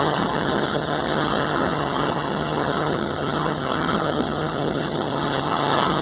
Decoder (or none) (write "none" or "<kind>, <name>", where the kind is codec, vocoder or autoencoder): vocoder, HiFi-GAN